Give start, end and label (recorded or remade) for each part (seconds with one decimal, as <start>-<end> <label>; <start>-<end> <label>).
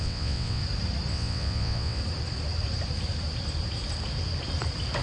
0.0-0.6 remade; 0.6-1.1 recorded; 1.1-2.0 remade; 2.0-5.0 recorded